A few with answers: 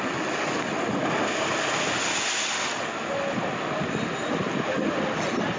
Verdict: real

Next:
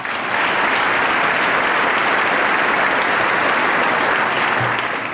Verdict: real